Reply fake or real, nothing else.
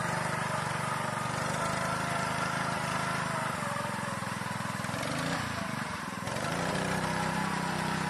fake